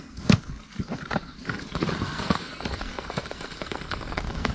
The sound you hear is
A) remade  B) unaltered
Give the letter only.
A